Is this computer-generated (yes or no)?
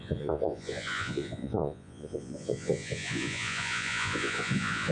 yes